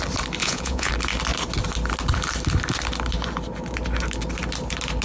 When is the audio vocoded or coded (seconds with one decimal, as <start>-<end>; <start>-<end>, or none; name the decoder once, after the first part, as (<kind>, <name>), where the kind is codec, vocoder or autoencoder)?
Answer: 0.4-0.9 (vocoder, Vocos)